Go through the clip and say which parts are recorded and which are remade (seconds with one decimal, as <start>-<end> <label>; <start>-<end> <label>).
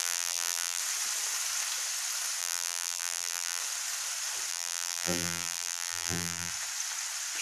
0.0-0.8 remade; 0.8-2.4 recorded; 2.4-3.6 remade; 3.6-4.5 recorded; 4.5-6.5 remade; 6.5-7.4 recorded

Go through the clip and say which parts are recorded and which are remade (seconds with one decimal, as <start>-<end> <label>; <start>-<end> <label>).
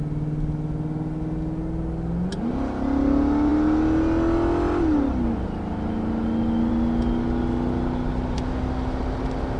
0.0-9.6 recorded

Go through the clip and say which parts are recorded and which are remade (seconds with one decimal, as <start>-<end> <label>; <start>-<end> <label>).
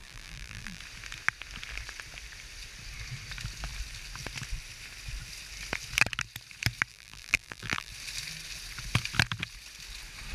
0.0-0.8 remade; 0.8-6.9 recorded; 6.9-7.9 remade; 7.9-10.3 recorded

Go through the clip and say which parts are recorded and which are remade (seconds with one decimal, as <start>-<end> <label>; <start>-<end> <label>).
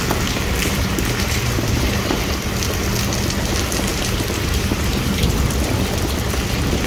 0.0-0.6 recorded; 0.6-2.1 remade; 2.1-3.9 recorded; 3.9-5.4 remade; 5.4-6.9 recorded